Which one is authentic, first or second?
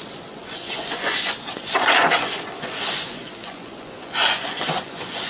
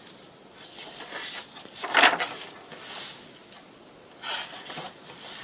second